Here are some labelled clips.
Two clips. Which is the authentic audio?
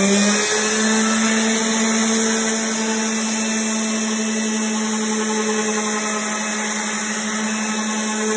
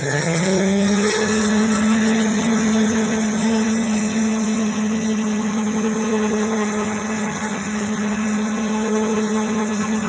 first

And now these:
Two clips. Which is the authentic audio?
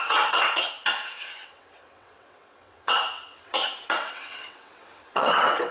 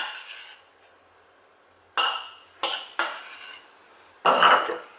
second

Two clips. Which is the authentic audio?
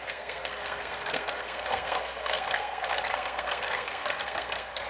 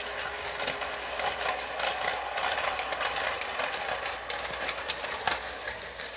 second